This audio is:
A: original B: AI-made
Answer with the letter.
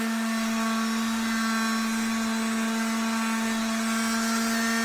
A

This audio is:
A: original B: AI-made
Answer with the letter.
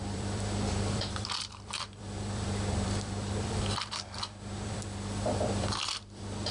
B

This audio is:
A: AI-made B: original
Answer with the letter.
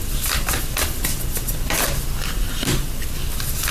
B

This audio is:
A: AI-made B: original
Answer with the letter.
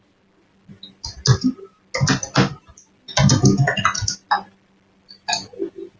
B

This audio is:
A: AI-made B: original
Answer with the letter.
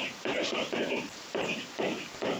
A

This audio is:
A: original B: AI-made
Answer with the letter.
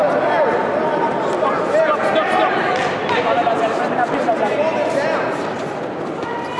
A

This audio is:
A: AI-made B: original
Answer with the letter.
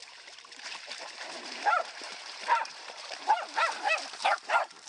A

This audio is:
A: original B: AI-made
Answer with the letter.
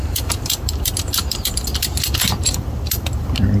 B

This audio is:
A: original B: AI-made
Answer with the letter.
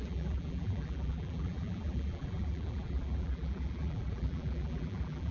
B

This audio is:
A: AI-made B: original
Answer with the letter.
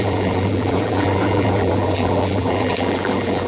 A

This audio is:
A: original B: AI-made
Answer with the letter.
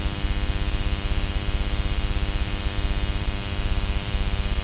B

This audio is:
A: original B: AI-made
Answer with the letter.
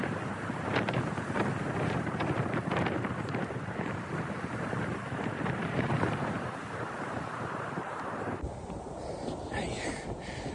B